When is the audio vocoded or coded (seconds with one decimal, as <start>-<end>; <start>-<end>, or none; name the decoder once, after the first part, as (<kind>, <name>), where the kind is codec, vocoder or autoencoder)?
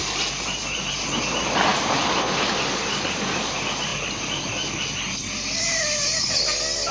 none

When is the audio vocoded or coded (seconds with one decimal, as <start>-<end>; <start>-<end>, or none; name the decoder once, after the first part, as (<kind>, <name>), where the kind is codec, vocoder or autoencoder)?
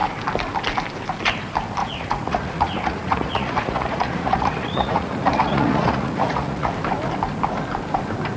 1.8-6.7 (vocoder, Vocos)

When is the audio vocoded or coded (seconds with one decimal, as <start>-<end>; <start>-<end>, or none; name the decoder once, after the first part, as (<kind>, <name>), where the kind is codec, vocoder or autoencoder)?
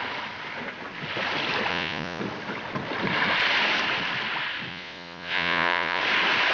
1.7-2.2 (vocoder, Vocos); 4.7-6.0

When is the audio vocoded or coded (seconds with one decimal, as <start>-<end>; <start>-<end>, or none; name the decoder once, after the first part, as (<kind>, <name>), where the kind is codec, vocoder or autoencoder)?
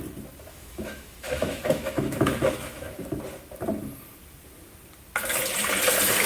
0.5-3.2 (autoencoder, DAC-VAE)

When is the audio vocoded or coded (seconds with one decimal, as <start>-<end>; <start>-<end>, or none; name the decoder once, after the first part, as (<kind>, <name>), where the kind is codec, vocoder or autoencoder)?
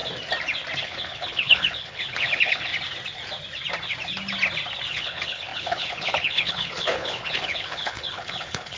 0.8-2.7 (codec, HILCodec); 4.9-8.8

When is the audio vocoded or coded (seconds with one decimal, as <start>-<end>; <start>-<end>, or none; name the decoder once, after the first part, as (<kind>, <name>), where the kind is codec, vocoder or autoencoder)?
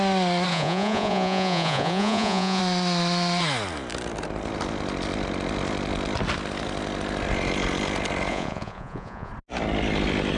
0.5-2.6 (vocoder, Vocos); 8.3-9.3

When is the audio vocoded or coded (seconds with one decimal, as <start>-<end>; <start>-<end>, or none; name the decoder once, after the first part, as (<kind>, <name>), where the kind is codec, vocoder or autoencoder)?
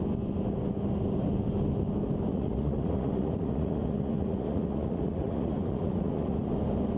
2.3-6.5 (vocoder, Vocos)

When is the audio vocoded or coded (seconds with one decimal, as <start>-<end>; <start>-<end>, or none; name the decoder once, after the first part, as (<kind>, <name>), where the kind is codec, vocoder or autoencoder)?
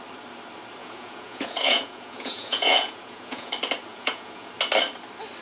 0.8-3.5 (vocoder, Vocos); 3.9-4.5